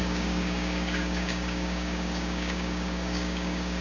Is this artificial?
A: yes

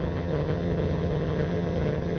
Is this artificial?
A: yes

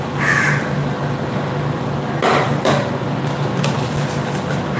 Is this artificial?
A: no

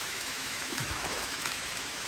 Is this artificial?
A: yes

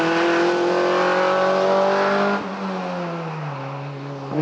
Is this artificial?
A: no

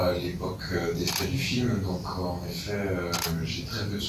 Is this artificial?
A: no